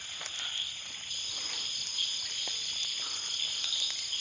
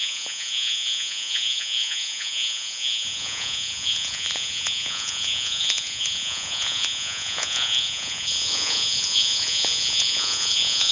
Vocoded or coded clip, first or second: second